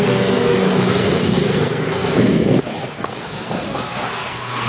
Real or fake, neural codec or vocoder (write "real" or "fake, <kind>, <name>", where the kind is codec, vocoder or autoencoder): fake, codec, SNAC